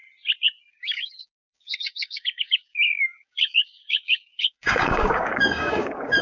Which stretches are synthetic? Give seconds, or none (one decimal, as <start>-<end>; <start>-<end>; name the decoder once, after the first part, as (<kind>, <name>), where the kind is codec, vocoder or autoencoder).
0.7-6.2 (codec, DAC)